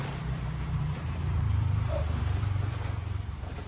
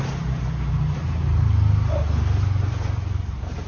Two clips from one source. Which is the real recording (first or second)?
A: second